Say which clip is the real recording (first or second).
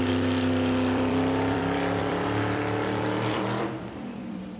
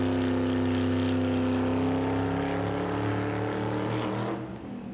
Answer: second